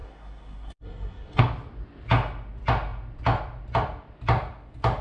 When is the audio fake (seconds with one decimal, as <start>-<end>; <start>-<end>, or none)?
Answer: 0.0-1.4